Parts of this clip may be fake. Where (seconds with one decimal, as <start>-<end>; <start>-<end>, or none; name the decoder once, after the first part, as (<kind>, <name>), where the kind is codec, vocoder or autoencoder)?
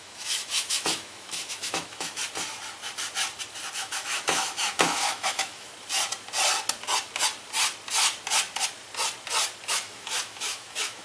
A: 0.0-2.2 (autoencoder, DAC-VAE); 3.7-5.7; 9.7-11.0